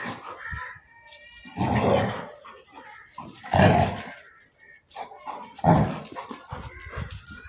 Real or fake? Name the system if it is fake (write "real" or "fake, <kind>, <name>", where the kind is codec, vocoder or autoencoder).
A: real